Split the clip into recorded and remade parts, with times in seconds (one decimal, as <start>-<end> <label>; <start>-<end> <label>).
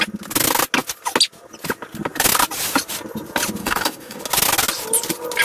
0.0-3.6 recorded; 3.6-4.2 remade; 4.2-5.4 recorded